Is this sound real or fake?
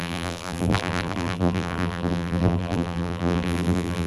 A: fake